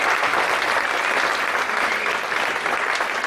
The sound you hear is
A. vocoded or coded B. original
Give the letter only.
B